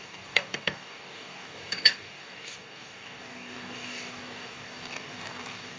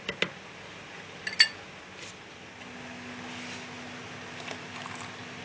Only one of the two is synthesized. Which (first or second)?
first